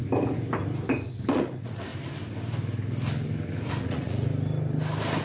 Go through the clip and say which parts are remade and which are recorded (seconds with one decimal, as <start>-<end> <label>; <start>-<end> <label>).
0.0-1.3 recorded; 1.3-1.9 remade; 1.9-3.7 recorded; 3.7-4.3 remade; 4.3-5.2 recorded